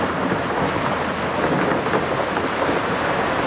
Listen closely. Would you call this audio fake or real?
real